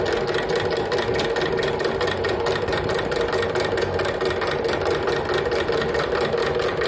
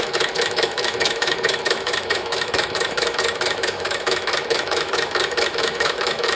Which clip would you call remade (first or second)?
second